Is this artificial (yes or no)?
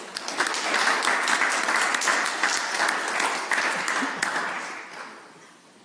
no